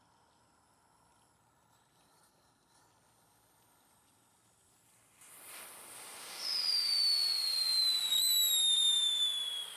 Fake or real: real